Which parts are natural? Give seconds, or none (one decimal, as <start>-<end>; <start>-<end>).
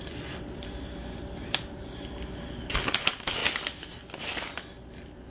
0.0-5.3